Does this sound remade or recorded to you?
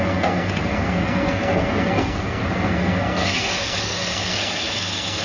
remade